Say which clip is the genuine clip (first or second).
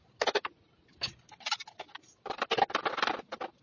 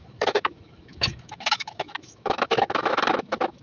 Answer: first